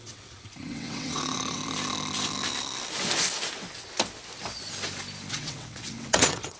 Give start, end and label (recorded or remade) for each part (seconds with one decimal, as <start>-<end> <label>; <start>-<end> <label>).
0.0-1.6 remade; 1.6-5.3 recorded; 5.3-6.6 remade

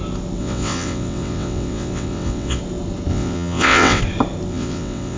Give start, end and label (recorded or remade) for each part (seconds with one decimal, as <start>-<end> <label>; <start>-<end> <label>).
0.0-0.4 recorded; 0.4-2.6 remade; 2.6-3.1 recorded; 3.1-4.0 remade; 4.0-4.5 recorded; 4.5-5.2 remade

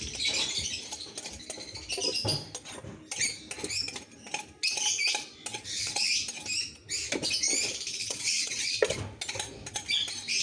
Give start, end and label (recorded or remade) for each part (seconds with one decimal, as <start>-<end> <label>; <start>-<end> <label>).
0.0-5.5 recorded; 5.5-6.1 remade; 6.1-7.9 recorded; 7.9-8.8 remade; 8.8-10.4 recorded

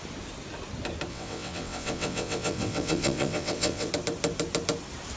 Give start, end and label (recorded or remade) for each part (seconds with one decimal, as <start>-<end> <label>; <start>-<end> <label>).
0.0-1.1 recorded; 1.1-3.9 remade; 3.9-5.2 recorded

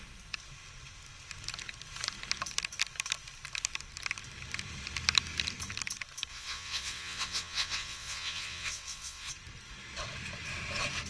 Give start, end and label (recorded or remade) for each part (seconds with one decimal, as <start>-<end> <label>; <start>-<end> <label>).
0.0-6.3 recorded; 6.3-9.3 remade; 9.3-11.1 recorded

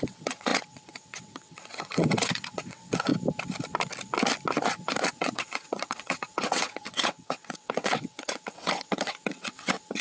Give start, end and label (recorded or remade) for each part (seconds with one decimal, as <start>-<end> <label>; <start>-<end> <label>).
0.0-3.1 remade; 3.1-5.1 recorded; 5.1-10.0 remade

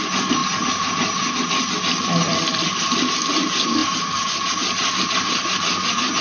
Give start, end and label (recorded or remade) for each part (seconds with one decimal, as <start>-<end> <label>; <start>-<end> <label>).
0.0-6.2 recorded

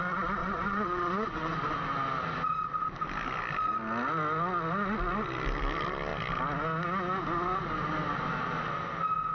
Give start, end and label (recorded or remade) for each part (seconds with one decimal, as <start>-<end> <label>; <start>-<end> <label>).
0.0-0.4 recorded; 0.4-1.5 remade; 1.5-9.3 recorded